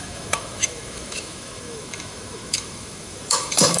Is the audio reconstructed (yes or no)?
yes